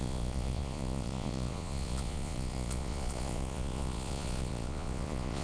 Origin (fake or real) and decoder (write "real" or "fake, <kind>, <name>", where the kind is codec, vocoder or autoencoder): fake, vocoder, Vocos